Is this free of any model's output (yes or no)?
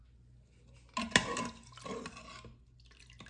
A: yes